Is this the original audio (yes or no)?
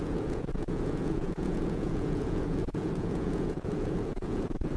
no